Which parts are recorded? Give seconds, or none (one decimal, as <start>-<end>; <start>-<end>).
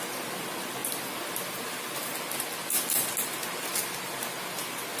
0.0-5.0